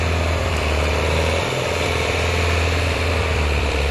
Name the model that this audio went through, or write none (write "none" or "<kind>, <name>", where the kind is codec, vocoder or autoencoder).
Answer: vocoder, BigVGAN v2